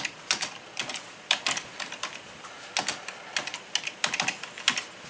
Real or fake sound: real